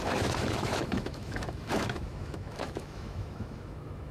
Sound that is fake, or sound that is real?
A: fake